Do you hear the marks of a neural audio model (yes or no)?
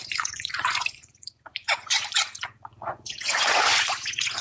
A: yes